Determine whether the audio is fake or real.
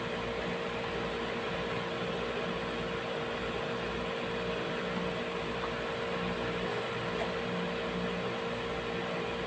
real